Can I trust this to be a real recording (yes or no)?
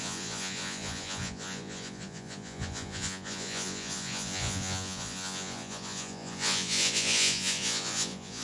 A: no